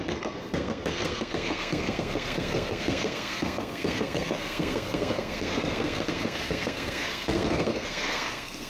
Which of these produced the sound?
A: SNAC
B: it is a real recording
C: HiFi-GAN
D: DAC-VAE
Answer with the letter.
A